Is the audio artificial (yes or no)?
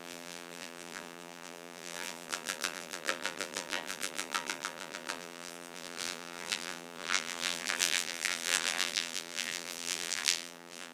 yes